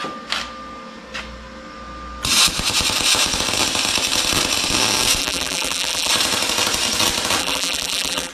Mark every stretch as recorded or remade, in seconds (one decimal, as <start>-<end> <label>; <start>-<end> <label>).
0.0-5.2 recorded; 5.2-6.1 remade; 6.1-7.4 recorded; 7.4-8.3 remade